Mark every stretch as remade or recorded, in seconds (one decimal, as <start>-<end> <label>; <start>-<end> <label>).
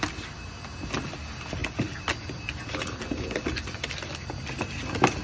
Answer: 0.0-5.2 recorded